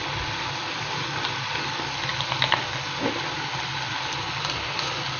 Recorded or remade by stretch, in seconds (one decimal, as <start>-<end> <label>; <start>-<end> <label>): 0.0-5.2 recorded